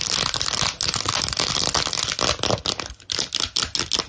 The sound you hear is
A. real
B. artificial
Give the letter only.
A